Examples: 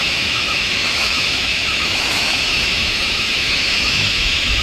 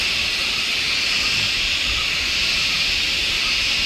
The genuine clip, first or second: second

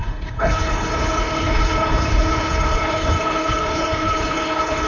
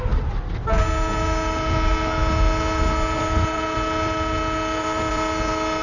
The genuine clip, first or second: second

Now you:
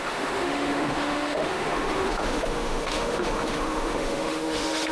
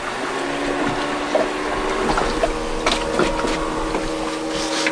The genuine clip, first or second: second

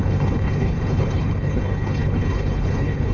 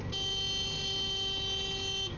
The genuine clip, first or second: second